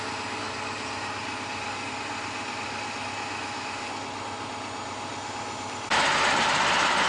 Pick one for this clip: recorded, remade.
recorded